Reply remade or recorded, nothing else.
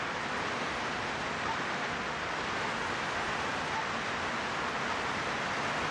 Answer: remade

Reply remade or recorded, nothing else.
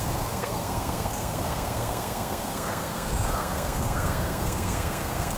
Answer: remade